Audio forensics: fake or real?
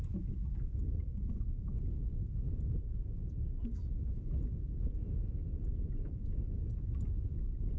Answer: real